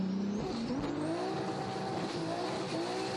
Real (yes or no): yes